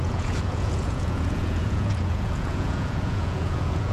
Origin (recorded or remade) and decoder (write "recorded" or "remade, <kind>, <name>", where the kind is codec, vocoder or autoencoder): remade, vocoder, Vocos